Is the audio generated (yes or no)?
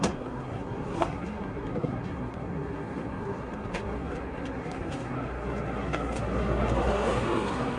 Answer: yes